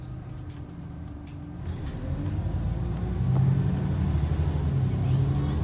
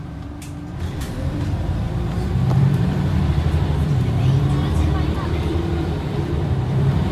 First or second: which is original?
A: first